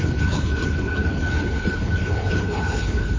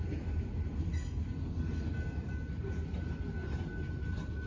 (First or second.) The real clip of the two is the second